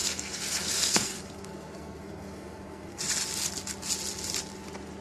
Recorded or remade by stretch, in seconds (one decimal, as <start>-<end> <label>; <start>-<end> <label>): 0.0-3.0 remade; 3.0-5.0 recorded